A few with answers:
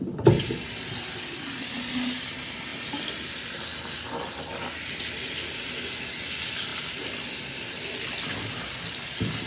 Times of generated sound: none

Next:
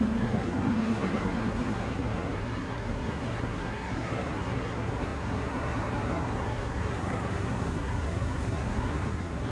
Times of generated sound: 0.0-9.5 (codec, SNAC)

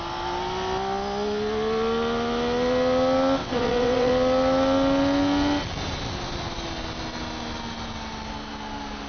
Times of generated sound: 3.4-4.1 (vocoder, WaveNeXt)

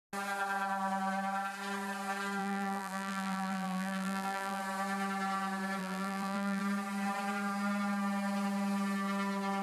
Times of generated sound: 2.4-4.6 (vocoder, BigVGAN v2); 5.8-6.6

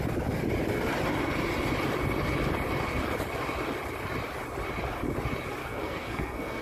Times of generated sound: 5.6-6.6 (codec, SNAC)

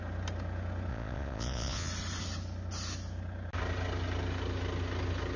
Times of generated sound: 0.9-1.9 (vocoder, Vocos)